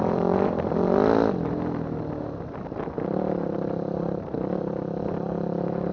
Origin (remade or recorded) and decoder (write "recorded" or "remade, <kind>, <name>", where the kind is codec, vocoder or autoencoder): recorded